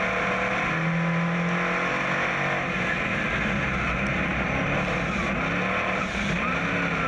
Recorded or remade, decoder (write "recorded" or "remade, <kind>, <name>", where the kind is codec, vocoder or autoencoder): recorded